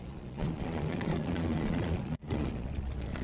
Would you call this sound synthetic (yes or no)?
yes